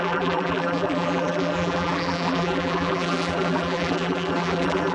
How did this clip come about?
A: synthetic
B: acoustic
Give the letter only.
A